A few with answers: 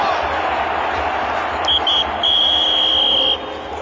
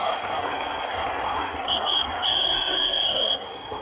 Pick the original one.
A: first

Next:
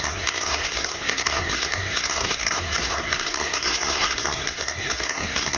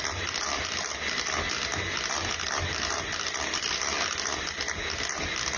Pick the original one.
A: second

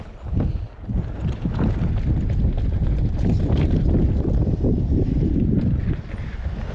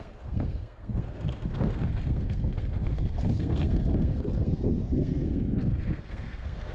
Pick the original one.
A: first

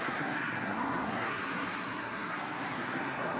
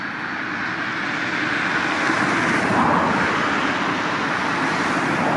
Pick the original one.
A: second